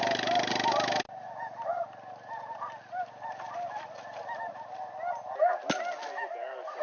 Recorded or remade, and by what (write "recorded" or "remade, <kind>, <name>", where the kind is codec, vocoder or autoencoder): recorded